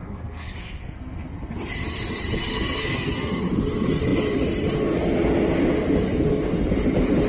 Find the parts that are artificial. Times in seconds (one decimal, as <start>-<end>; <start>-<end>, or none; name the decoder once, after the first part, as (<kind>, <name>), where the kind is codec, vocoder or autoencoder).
0.0-1.5 (codec, SNAC); 2.5-3.4